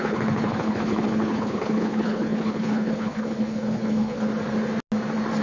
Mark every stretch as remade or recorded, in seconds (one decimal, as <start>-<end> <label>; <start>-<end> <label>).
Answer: 0.0-4.3 remade; 4.3-5.4 recorded